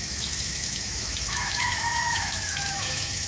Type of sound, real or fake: fake